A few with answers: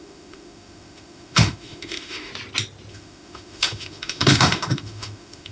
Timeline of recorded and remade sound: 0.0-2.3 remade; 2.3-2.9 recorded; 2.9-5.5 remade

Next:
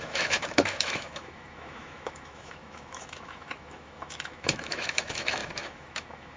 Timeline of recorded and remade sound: 0.0-6.4 remade

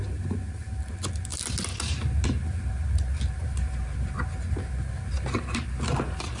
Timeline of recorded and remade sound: 0.0-6.4 recorded

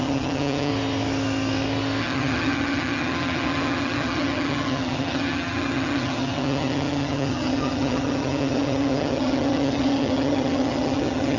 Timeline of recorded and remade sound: 0.0-0.7 remade; 0.7-2.0 recorded; 2.0-11.4 remade

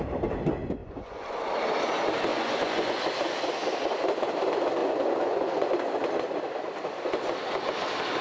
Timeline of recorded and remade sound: 0.0-0.8 recorded; 0.8-1.4 remade; 1.4-2.3 recorded; 2.3-3.0 remade; 3.0-4.8 recorded; 4.8-5.7 remade; 5.7-8.2 recorded

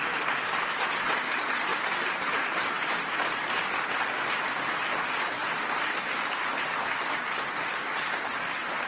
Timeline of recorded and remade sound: 0.0-1.7 recorded; 1.7-3.7 remade; 3.7-5.4 recorded; 5.4-6.7 remade; 6.7-8.9 recorded

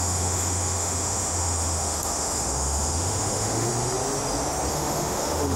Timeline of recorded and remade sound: 0.0-3.7 remade; 3.7-4.7 recorded; 4.7-5.6 remade